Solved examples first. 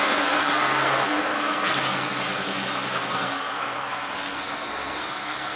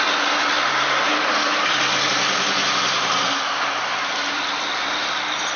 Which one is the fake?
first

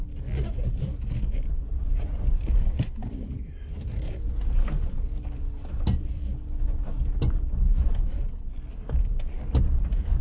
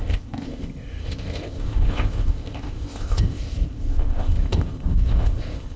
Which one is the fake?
second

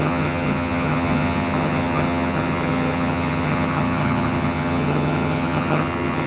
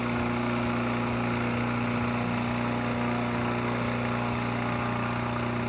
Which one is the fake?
first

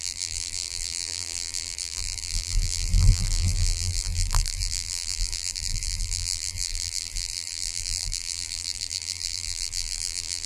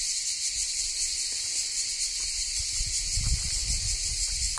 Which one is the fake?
first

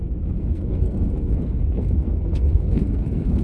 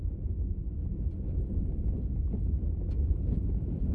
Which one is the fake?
first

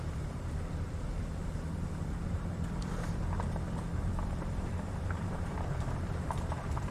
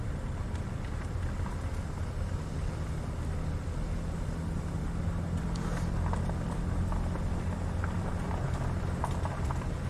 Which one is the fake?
first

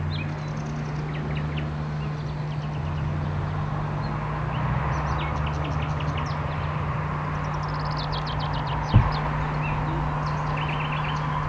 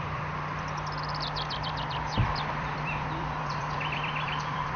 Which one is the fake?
second